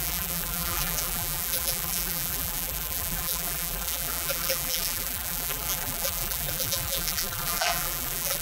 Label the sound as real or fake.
fake